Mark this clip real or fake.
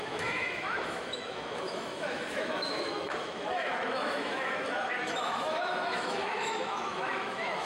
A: fake